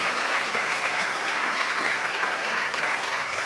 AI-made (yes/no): yes